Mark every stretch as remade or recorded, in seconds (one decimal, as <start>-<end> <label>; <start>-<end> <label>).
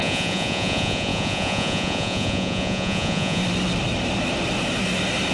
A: 0.0-3.4 remade; 3.4-5.3 recorded